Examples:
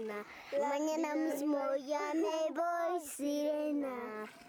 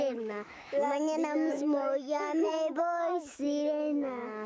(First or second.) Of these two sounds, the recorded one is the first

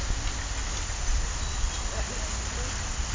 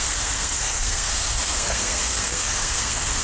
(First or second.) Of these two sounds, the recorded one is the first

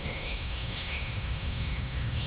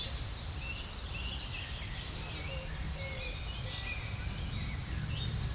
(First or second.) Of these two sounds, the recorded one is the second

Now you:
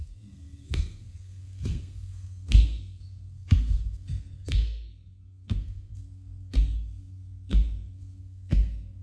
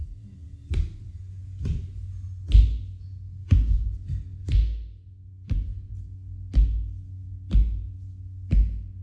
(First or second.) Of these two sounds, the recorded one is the second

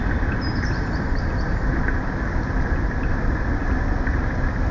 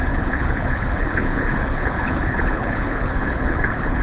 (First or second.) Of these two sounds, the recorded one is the first